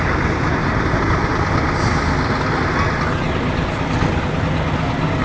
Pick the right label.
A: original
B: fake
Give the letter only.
A